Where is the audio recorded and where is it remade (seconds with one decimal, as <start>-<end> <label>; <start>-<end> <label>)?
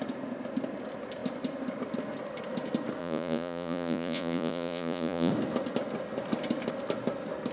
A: 0.0-3.0 recorded; 3.0-5.3 remade; 5.3-7.5 recorded